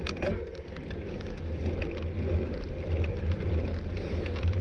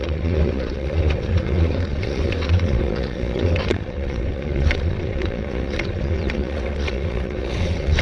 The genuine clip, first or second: first